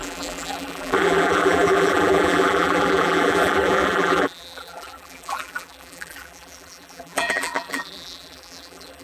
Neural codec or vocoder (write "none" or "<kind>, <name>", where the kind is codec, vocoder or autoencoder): vocoder, BigVGAN v2